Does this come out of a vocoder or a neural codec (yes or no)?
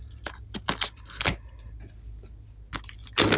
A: no